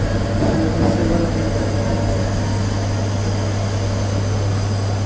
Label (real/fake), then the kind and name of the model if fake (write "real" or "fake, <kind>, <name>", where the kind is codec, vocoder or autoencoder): real